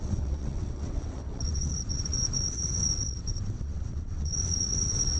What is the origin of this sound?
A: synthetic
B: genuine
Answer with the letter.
A